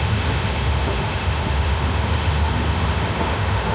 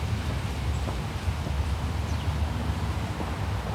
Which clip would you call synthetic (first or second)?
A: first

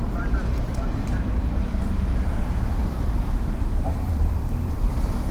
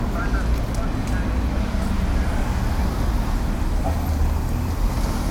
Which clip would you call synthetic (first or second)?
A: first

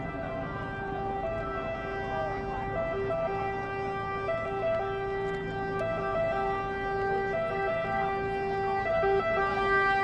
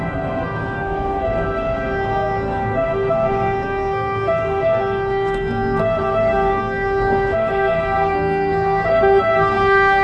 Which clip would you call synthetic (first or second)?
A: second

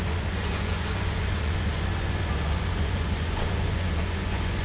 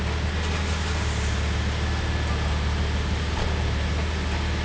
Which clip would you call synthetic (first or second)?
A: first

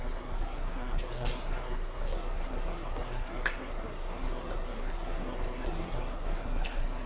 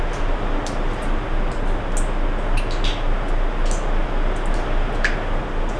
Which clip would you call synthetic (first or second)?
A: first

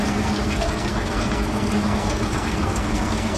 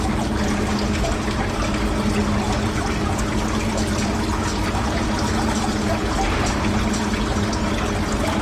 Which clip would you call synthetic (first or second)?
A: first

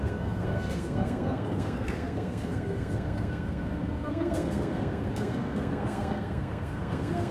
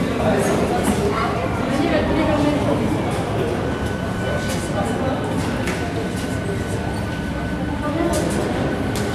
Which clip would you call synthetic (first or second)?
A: first